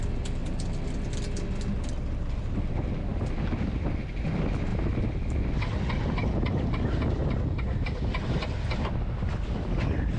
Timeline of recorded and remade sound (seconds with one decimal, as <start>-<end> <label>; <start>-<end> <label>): 0.0-0.4 remade; 0.4-1.9 recorded; 1.9-7.2 remade; 7.2-9.1 recorded; 9.1-10.2 remade